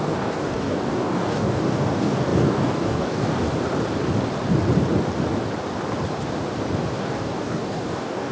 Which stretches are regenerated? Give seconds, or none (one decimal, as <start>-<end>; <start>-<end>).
0.0-3.5; 7.0-8.3